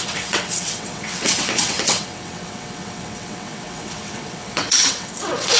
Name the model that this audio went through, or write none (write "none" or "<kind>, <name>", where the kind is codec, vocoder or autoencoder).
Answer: vocoder, WaveNeXt